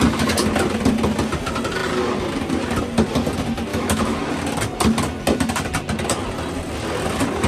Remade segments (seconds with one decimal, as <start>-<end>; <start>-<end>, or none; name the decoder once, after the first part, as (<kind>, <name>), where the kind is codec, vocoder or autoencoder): 3.7-4.3 (autoencoder, DAC-VAE)